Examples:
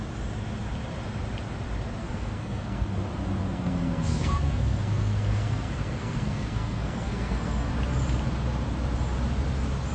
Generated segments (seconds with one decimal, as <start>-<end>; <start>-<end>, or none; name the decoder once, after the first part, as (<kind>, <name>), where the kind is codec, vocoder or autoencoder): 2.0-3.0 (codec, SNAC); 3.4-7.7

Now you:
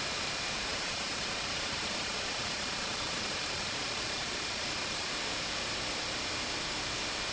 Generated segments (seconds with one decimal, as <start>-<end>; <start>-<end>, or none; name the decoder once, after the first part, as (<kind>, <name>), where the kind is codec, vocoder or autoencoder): 0.7-5.1 (vocoder, BigVGAN v2)

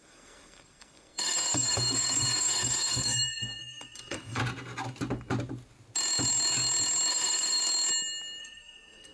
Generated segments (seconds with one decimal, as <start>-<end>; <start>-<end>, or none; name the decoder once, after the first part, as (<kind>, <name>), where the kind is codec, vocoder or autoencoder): 0.0-4.4 (codec, SNAC); 7.1-7.6; 8.4-9.1

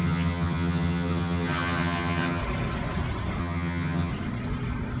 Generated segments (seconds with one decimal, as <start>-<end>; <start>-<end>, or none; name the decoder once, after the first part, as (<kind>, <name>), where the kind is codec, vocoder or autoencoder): 0.0-2.4 (vocoder, HiFi-GAN); 3.4-4.1